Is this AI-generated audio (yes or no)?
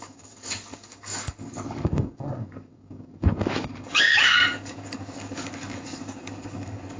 yes